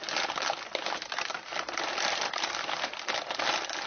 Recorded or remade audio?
recorded